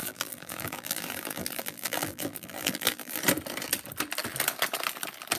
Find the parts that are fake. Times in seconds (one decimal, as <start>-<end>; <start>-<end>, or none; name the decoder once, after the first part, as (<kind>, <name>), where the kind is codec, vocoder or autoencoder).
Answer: 0.0-3.2 (vocoder, BigVGAN v2)